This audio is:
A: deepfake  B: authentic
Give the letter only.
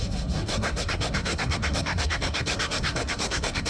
A